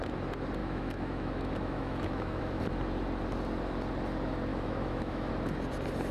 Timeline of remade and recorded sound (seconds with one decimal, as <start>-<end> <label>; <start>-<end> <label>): 0.0-0.6 recorded; 0.6-2.6 remade; 2.6-4.5 recorded; 4.5-5.3 remade; 5.3-6.1 recorded